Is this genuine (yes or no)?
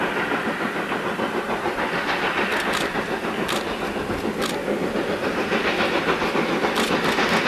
yes